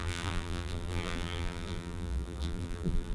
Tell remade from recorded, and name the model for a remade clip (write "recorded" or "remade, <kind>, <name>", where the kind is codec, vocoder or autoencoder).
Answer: remade, vocoder, BigVGAN v2